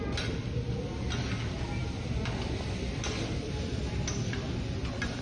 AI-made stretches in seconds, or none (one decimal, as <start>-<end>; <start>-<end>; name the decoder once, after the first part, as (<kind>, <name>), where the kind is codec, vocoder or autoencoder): none